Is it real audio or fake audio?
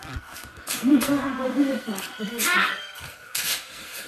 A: fake